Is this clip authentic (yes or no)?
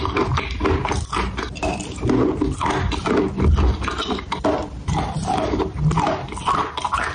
yes